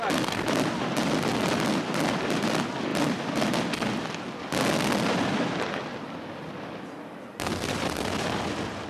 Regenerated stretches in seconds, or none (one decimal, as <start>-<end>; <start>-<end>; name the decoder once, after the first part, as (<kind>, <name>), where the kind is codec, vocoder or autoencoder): none